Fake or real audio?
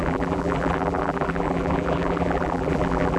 fake